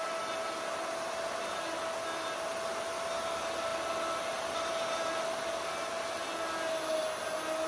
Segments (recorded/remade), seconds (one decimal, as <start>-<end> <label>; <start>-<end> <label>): 0.0-7.7 recorded